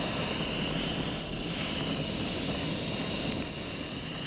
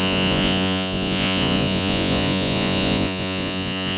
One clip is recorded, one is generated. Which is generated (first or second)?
second